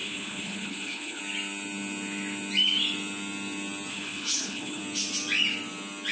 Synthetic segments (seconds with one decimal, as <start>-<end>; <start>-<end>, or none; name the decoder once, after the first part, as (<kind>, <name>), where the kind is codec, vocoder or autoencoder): 0.0-1.2 (codec, HILCodec); 3.9-4.8